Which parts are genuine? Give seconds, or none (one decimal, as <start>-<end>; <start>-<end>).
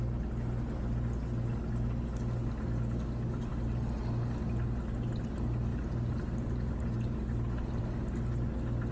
0.0-5.7; 7.8-8.9